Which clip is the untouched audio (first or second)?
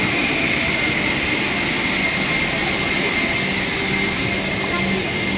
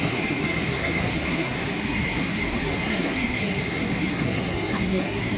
first